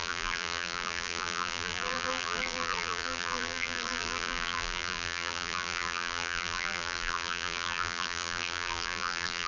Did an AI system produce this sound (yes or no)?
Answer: yes